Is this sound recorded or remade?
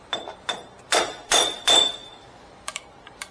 remade